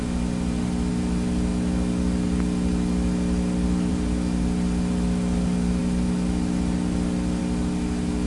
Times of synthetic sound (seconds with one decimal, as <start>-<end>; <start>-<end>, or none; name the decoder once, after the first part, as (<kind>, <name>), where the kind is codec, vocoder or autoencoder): none